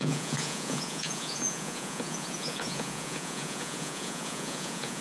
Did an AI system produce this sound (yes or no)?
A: yes